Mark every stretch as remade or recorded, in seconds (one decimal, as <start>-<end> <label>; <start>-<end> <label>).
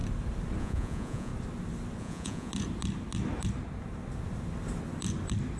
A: 0.0-0.6 recorded; 0.6-1.3 remade; 1.3-2.0 recorded; 2.0-2.5 remade; 2.5-5.6 recorded